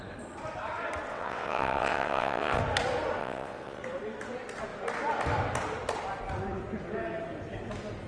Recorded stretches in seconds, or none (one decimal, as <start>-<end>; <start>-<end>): 0.0-1.1; 2.6-3.2; 3.8-8.1